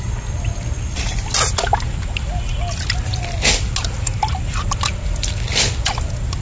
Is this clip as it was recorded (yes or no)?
yes